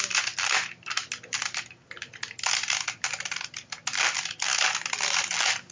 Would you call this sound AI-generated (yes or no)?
no